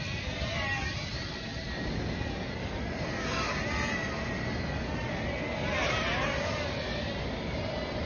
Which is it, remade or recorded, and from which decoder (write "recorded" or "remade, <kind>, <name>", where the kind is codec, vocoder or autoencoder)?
recorded